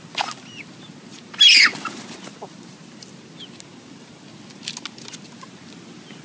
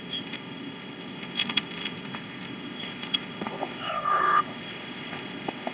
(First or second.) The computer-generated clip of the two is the second